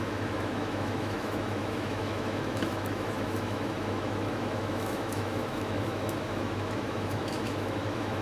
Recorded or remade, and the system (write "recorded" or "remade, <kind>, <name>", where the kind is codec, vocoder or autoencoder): remade, autoencoder, DAC-VAE